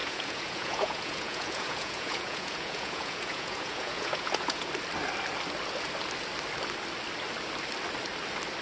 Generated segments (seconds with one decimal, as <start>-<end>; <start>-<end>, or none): 0.0-4.7